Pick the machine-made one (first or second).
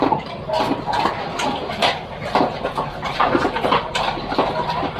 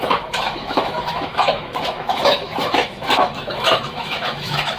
second